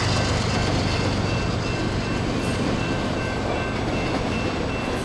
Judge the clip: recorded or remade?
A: recorded